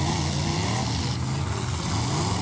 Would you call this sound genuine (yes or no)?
yes